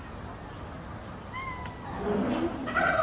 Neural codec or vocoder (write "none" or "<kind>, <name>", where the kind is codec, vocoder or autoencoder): none